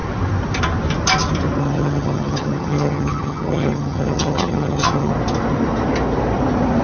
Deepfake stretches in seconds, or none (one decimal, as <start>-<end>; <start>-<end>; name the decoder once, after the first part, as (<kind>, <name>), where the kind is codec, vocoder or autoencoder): 1.6-5.1 (vocoder, HiFi-GAN)